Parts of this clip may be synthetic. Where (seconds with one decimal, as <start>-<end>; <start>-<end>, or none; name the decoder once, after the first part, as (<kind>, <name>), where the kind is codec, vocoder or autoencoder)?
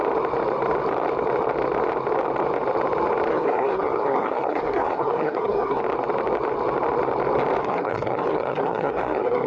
3.3-5.8 (codec, SNAC); 7.6-9.5